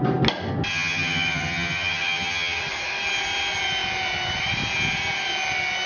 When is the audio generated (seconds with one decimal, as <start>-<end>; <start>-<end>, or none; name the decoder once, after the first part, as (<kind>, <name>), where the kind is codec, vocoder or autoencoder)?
0.7-2.6 (vocoder, HiFi-GAN)